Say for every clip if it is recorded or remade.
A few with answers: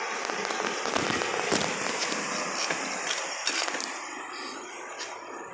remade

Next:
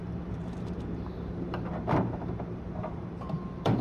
remade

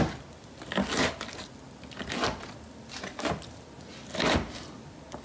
recorded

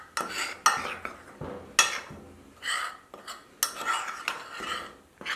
recorded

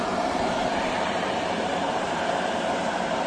remade